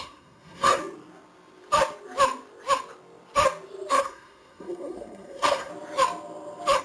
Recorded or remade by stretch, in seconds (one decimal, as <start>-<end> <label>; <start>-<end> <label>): 0.0-0.8 remade; 0.8-3.9 recorded; 3.9-5.7 remade; 5.7-6.8 recorded